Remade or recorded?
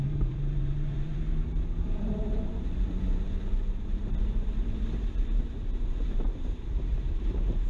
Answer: remade